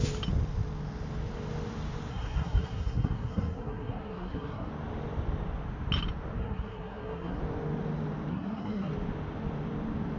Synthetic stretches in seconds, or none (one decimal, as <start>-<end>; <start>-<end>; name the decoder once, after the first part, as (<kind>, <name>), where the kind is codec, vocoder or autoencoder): 2.1-4.7 (codec, SNAC); 6.4-7.4; 8.3-8.9